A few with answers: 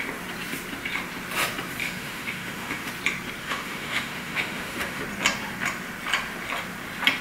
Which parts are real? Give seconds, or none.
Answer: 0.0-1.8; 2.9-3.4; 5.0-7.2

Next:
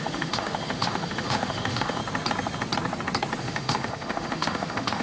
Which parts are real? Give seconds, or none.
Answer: 2.0-3.4

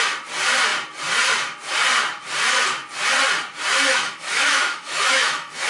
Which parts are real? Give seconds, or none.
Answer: 0.0-3.9

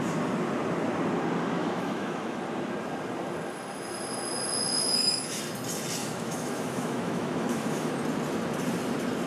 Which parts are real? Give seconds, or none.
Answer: 0.0-1.6; 2.4-4.7; 5.4-6.0; 7.9-9.3

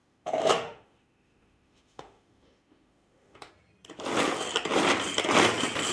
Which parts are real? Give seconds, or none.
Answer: 3.5-5.9

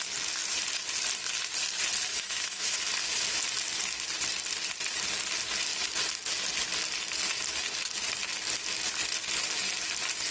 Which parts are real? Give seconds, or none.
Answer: 0.0-2.1; 2.8-10.3

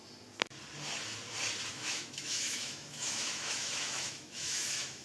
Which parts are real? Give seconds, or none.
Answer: 0.0-1.7

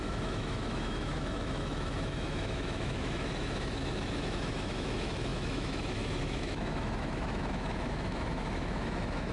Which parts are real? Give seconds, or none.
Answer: none